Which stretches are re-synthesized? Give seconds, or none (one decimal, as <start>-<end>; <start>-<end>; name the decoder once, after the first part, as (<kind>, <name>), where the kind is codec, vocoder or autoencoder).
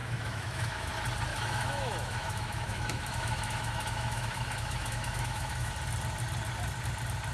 0.0-0.9 (autoencoder, DAC-VAE); 1.3-5.7